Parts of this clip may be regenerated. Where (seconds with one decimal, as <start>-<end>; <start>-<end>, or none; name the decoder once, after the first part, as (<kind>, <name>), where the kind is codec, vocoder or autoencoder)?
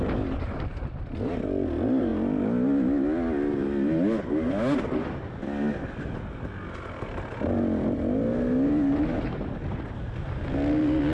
none